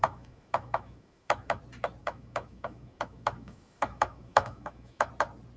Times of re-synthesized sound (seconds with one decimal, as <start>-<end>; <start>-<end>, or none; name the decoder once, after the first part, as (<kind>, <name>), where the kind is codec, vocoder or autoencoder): 0.0-1.6 (autoencoder, DAC-VAE); 2.0-5.1